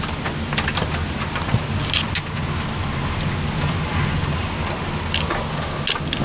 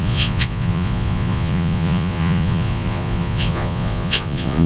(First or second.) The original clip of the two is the first